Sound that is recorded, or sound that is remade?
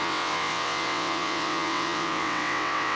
remade